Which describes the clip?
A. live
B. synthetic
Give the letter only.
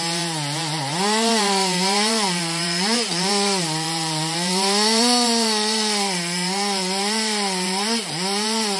B